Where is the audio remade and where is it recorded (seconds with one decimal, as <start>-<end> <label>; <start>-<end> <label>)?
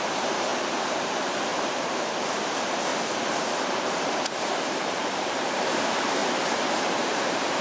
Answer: 0.0-2.9 remade; 2.9-3.7 recorded; 3.7-6.2 remade; 6.2-7.0 recorded; 7.0-7.6 remade